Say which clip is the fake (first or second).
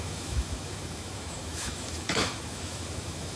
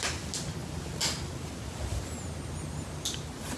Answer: first